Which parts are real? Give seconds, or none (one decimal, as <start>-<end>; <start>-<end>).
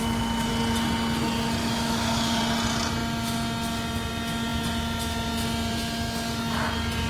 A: 0.5-1.6; 2.4-7.1